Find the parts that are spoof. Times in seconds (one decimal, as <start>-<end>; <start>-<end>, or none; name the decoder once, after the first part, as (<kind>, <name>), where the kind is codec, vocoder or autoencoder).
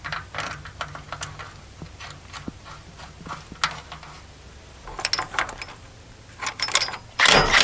none